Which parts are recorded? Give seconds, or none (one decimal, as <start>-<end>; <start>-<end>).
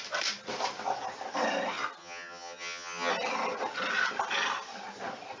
0.0-2.0; 3.1-5.4